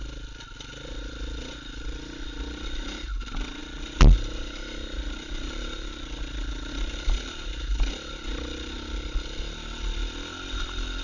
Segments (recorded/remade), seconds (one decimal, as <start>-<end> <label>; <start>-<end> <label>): 0.0-11.0 recorded